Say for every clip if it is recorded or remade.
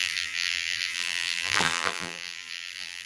remade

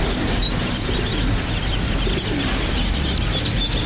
recorded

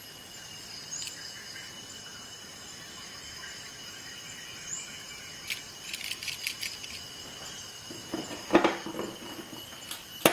recorded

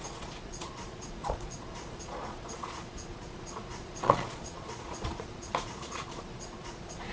remade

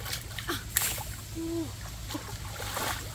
recorded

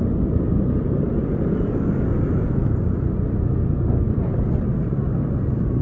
recorded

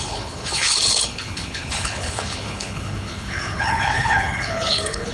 remade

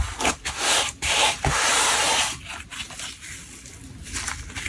recorded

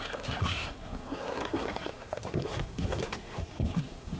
remade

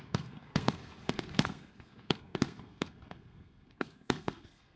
remade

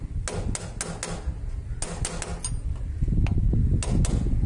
recorded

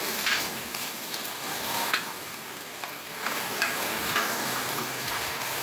remade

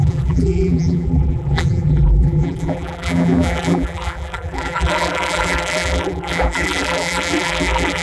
remade